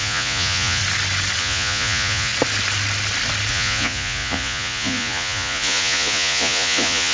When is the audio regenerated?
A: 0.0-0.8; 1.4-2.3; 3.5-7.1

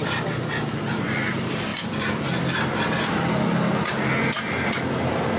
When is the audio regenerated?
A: none